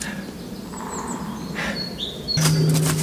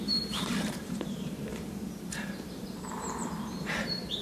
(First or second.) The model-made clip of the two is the second